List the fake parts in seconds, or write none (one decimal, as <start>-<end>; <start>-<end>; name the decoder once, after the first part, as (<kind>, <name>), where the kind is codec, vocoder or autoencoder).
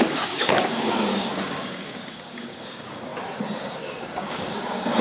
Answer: 0.0-3.1 (codec, DAC); 3.6-5.0